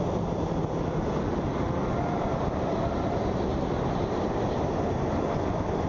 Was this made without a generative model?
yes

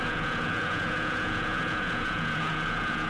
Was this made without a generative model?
no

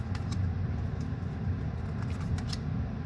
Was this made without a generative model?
yes